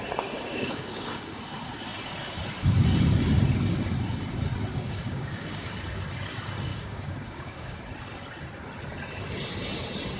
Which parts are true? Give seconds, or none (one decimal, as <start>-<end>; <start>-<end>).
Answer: 0.0-0.5; 1.4-4.7; 5.7-6.7; 7.8-10.2